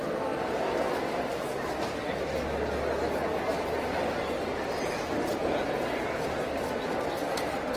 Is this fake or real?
real